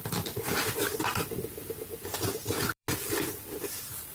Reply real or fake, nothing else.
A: fake